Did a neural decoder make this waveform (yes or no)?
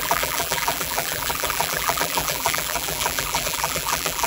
yes